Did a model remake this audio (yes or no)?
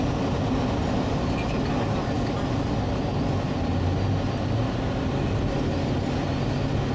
no